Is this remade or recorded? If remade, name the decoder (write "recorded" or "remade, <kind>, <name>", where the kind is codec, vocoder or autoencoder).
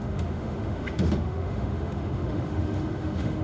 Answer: remade, autoencoder, DAC-VAE